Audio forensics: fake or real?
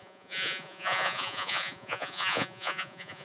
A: fake